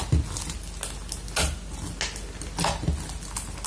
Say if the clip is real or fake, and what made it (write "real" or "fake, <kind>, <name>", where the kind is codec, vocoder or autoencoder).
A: real